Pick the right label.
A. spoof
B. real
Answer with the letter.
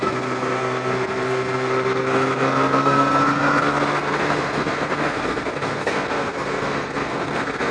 A